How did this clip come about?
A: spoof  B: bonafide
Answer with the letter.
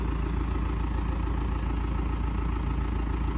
B